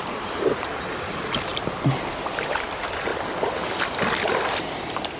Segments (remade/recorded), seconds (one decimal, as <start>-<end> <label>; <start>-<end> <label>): 0.0-1.5 remade; 1.5-2.1 recorded; 2.1-3.1 remade; 3.1-3.8 recorded; 3.8-5.2 remade